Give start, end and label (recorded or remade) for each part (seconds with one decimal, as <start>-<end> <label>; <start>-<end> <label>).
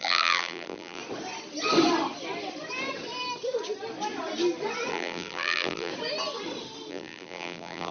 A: 0.0-1.0 remade; 1.0-4.9 recorded; 4.9-5.9 remade; 5.9-6.9 recorded; 6.9-7.9 remade